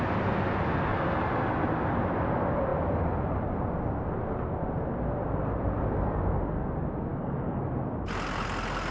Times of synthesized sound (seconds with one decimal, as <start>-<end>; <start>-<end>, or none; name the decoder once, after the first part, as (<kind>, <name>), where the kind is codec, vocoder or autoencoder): 7.1-7.6 (codec, DAC)

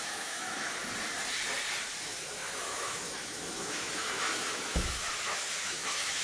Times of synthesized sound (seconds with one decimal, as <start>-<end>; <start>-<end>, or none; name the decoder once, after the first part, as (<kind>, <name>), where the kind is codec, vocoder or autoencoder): 0.0-0.8 (autoencoder, DAC-VAE); 2.0-6.2

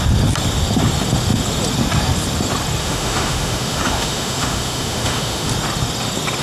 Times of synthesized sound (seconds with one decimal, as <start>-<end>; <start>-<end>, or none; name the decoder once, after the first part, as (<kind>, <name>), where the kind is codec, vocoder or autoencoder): 2.8-5.5 (autoencoder, DAC-VAE)

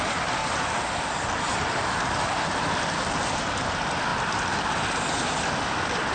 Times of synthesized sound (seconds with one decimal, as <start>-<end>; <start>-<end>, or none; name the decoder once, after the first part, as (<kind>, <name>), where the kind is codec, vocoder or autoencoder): 0.4-3.3 (vocoder, BigVGAN v2)